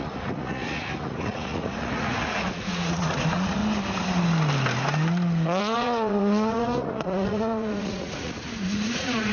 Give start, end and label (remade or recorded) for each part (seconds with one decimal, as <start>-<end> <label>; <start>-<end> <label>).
0.0-3.6 remade; 3.6-5.6 recorded; 5.6-9.3 remade